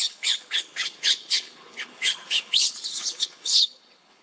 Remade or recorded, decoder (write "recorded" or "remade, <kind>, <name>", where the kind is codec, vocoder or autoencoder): remade, codec, HILCodec